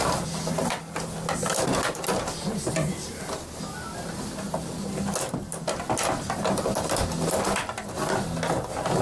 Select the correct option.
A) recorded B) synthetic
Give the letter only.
A